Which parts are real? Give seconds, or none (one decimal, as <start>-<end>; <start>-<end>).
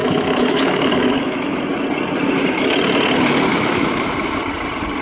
1.6-3.5; 4.4-5.0